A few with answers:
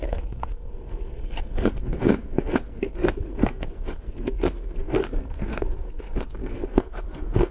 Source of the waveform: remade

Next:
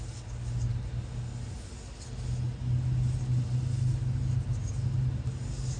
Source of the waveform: recorded